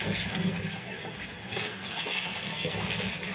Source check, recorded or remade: remade